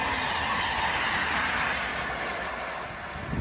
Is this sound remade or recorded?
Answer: recorded